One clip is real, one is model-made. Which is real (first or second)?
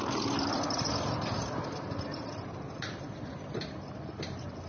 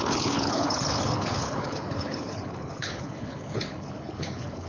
first